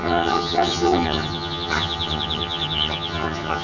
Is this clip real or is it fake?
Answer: fake